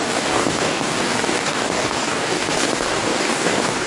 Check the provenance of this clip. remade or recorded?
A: remade